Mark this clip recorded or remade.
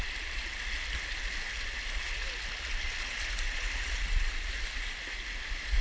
recorded